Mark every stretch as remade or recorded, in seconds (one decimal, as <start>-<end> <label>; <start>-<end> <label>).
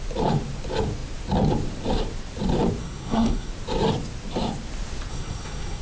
0.0-2.8 recorded; 2.8-3.5 remade; 3.5-5.1 recorded; 5.1-5.8 remade